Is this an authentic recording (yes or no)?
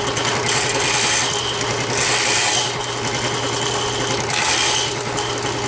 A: yes